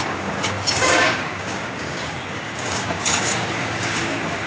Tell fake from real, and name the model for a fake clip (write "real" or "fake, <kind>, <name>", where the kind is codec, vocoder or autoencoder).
fake, codec, DAC